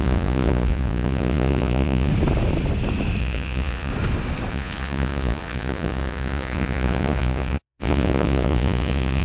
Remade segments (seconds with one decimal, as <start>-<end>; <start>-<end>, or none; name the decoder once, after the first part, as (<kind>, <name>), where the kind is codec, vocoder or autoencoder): 0.0-2.1 (vocoder, Vocos); 3.2-3.9; 4.5-9.2